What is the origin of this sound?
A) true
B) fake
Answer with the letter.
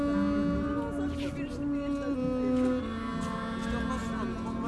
A